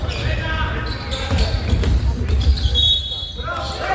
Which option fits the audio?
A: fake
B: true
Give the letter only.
B